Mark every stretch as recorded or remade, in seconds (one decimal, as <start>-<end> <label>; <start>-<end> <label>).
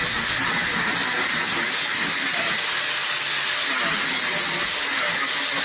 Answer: 0.0-5.6 recorded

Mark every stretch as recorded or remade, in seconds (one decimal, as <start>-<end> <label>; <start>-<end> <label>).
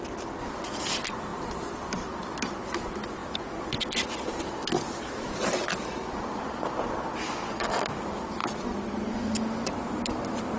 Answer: 0.0-3.2 remade; 3.2-8.0 recorded; 8.0-8.4 remade; 8.4-10.6 recorded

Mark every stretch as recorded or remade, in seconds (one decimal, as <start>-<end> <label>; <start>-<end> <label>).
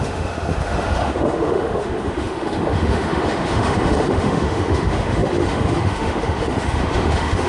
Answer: 0.0-7.5 remade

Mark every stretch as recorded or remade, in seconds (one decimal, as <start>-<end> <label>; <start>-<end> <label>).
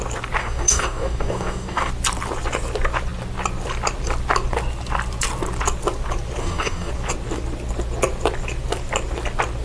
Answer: 0.0-0.4 recorded; 0.4-1.9 remade; 1.9-6.4 recorded; 6.4-6.9 remade; 6.9-9.6 recorded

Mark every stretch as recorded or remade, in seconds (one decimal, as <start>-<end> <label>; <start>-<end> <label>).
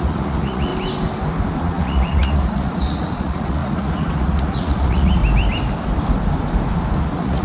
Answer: 0.0-0.7 remade; 0.7-1.6 recorded; 1.6-5.2 remade; 5.2-7.0 recorded; 7.0-7.4 remade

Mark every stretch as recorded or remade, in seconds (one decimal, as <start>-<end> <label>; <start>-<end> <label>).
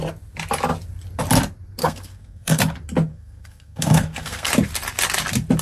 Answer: 0.0-1.8 recorded; 1.8-2.6 remade; 2.6-3.1 recorded; 3.1-4.5 remade; 4.5-5.6 recorded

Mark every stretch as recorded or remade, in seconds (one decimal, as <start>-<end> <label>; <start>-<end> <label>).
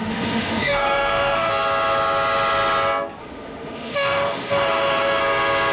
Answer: 0.0-1.5 remade; 1.5-3.2 recorded; 3.2-5.2 remade; 5.2-5.7 recorded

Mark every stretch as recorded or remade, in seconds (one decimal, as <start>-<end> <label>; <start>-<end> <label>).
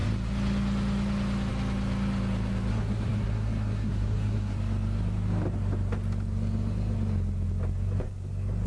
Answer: 0.0-2.7 recorded; 2.7-4.6 remade; 4.6-8.7 recorded